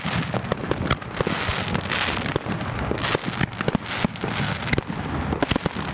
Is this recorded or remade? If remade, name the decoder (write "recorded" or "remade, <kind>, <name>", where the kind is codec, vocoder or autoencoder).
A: recorded